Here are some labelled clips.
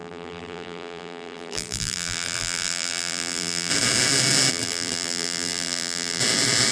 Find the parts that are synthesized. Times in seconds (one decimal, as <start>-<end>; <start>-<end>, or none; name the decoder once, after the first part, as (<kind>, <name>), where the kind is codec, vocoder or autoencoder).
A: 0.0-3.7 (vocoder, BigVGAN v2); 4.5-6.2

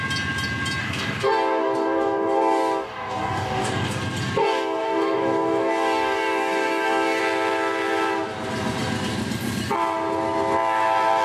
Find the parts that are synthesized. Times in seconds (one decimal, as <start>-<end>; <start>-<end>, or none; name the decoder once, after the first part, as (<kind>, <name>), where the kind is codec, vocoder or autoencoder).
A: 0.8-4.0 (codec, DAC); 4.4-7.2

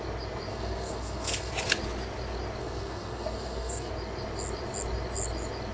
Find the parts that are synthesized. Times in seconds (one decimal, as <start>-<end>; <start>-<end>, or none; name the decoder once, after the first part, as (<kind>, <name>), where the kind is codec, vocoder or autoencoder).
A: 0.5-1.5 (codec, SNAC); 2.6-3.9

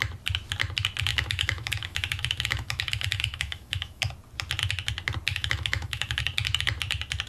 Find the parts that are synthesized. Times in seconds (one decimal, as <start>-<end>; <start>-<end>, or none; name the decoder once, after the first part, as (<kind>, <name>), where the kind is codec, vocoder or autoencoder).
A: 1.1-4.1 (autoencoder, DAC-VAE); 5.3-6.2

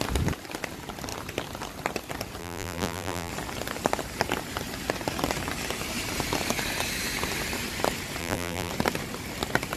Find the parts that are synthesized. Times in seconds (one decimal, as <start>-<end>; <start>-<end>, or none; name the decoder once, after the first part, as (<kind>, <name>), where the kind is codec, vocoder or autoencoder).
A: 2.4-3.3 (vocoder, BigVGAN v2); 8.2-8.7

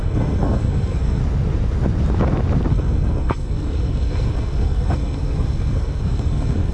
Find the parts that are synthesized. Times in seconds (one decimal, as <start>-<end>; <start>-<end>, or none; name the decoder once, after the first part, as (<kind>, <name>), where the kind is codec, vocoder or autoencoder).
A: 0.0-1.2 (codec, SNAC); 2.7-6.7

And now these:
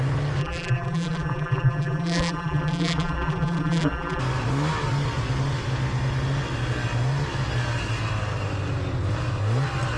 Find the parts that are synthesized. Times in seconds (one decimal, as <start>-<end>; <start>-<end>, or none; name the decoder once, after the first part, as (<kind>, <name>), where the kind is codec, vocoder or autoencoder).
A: 0.4-4.2 (vocoder, BigVGAN v2)

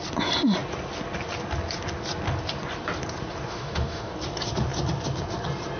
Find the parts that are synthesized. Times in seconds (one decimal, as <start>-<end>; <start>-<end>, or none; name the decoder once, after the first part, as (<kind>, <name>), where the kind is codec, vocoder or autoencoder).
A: 3.5-4.1 (autoencoder, DAC-VAE)